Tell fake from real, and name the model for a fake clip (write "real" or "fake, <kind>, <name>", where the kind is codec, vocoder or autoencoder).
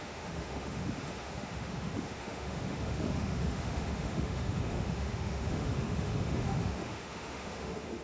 fake, autoencoder, DAC-VAE